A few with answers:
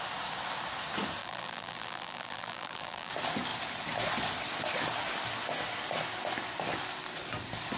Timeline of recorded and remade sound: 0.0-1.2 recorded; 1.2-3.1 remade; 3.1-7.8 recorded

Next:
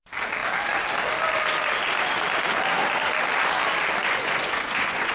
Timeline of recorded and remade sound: 0.0-4.0 recorded; 4.0-5.1 remade

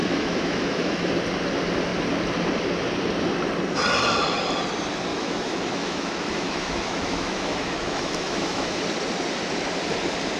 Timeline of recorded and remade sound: 0.0-1.1 remade; 1.1-5.1 recorded; 5.1-8.8 remade; 8.8-10.4 recorded

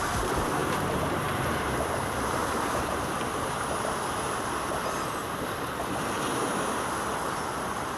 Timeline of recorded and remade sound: 0.0-8.0 recorded

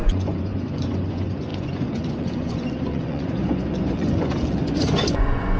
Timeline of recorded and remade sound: 0.0-5.6 remade